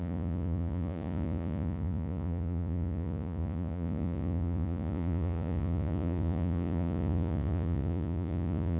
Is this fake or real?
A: fake